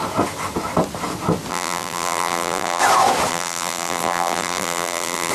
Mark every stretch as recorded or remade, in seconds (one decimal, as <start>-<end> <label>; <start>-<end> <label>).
0.0-1.5 recorded; 1.5-2.8 remade; 2.8-3.3 recorded; 3.3-5.3 remade